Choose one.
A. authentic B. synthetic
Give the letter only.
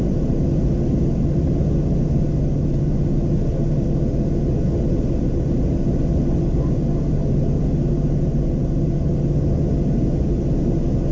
A